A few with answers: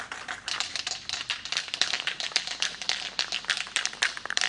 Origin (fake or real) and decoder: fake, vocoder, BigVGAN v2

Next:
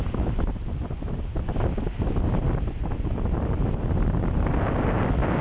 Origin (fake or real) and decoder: real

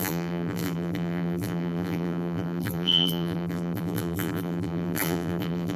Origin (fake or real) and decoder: fake, vocoder, BigVGAN v2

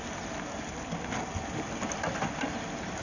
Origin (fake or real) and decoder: real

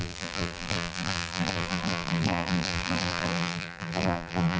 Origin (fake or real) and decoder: fake, vocoder, BigVGAN v2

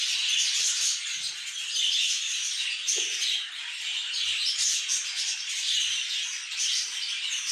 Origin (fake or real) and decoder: real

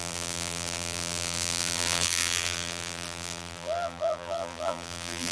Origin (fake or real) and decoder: fake, vocoder, BigVGAN v2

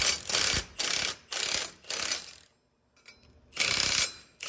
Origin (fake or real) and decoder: real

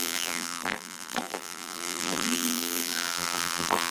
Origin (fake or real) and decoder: fake, vocoder, BigVGAN v2